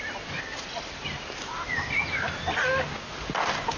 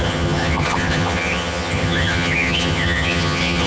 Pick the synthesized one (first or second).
second